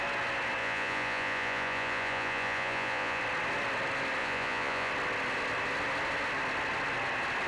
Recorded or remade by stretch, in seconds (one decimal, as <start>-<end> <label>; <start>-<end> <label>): 0.0-0.6 recorded; 0.6-3.2 remade; 3.2-4.2 recorded; 4.2-4.9 remade; 4.9-7.5 recorded